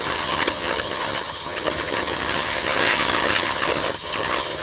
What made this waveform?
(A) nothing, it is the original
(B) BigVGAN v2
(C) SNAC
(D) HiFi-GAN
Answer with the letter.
D